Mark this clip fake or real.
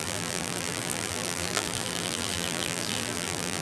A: fake